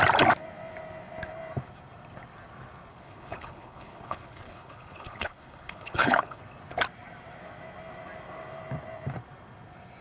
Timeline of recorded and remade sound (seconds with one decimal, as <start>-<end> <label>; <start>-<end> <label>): 0.0-2.9 recorded; 2.9-6.4 remade; 6.4-10.0 recorded